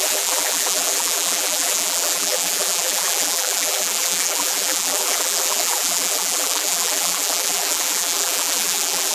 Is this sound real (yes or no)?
no